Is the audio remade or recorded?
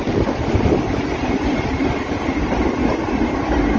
recorded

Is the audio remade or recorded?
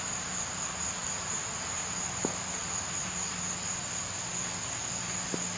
recorded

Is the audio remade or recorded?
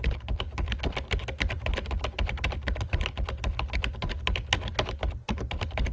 recorded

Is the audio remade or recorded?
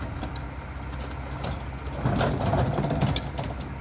recorded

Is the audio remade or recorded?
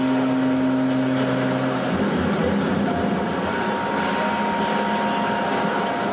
recorded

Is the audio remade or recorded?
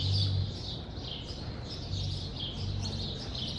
recorded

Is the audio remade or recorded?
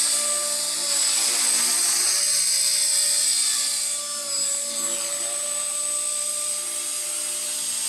recorded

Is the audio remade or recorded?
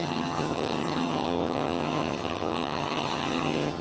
remade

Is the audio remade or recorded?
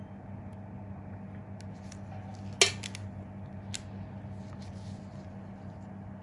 recorded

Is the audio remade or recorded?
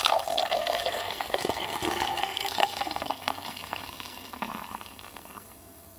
remade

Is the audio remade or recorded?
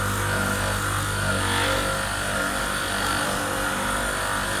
recorded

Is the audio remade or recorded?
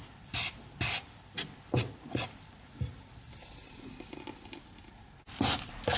recorded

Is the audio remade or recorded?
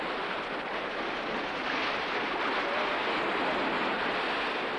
recorded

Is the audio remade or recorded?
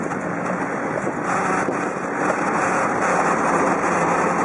recorded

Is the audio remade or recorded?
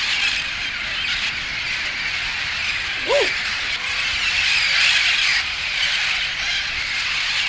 recorded